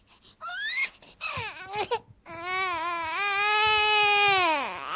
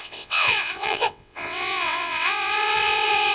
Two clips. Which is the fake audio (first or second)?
second